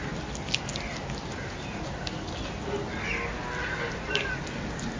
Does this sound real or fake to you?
real